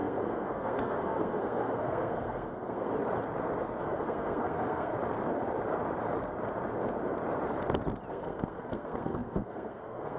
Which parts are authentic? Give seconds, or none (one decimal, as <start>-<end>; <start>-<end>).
2.9-3.8; 4.9-8.1